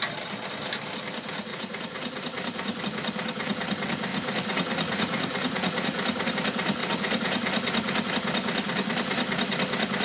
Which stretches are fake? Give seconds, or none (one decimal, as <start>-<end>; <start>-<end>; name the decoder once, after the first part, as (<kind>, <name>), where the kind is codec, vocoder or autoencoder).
1.5-2.8 (vocoder, Vocos); 4.1-6.3; 6.8-8.1